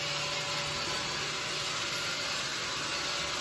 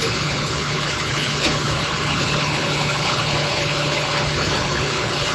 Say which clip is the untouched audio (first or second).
first